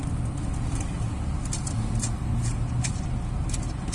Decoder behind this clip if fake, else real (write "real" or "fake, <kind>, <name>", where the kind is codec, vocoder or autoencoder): real